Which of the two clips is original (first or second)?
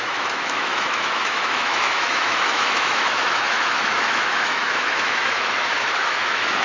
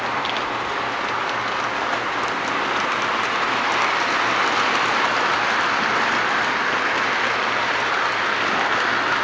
second